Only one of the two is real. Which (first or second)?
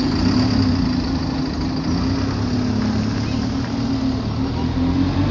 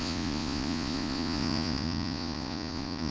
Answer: first